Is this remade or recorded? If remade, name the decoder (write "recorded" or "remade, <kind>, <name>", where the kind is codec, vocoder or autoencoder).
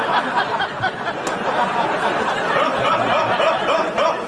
recorded